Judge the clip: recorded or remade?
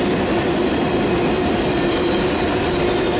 recorded